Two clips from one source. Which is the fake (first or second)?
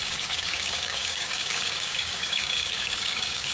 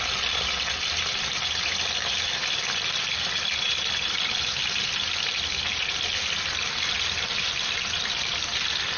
first